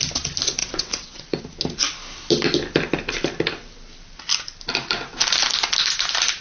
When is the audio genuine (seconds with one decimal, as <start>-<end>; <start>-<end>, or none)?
0.0-0.6; 1.4-6.4